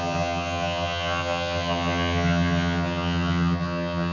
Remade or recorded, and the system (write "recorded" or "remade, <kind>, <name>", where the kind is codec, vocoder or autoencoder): remade, vocoder, HiFi-GAN